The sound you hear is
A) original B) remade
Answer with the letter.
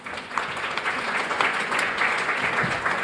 B